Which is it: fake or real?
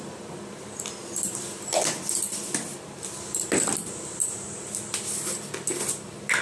fake